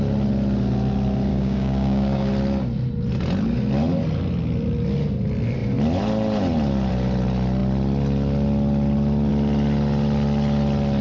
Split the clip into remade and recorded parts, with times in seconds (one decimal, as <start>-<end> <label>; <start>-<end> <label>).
0.0-1.3 recorded; 1.3-2.3 remade; 2.3-11.0 recorded